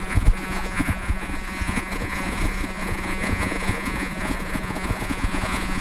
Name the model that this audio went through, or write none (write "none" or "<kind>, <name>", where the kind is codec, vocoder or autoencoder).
vocoder, Vocos